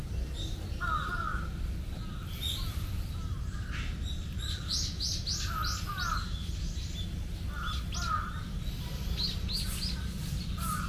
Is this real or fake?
real